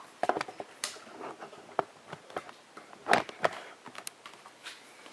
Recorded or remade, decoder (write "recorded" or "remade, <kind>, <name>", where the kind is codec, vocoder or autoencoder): recorded